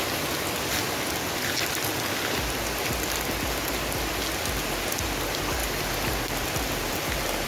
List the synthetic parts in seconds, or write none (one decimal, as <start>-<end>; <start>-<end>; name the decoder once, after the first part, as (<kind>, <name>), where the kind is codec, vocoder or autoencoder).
none